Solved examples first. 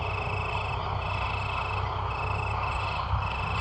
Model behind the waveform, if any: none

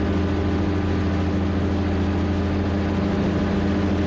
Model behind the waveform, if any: none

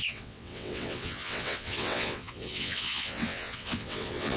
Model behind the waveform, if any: vocoder, WaveNeXt